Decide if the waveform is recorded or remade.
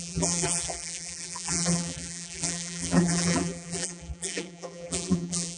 remade